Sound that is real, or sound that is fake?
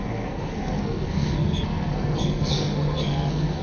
fake